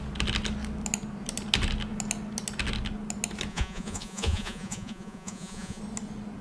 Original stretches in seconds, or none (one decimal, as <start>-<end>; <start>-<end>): 0.0-3.5; 5.8-6.4